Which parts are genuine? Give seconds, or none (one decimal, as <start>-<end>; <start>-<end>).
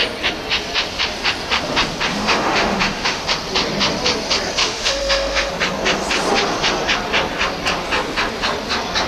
0.0-2.1; 3.2-4.6; 5.5-9.1